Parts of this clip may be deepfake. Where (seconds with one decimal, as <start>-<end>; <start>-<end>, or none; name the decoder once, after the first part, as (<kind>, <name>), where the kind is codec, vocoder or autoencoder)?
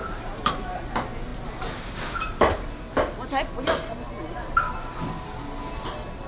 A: 0.0-0.5 (vocoder, BigVGAN v2)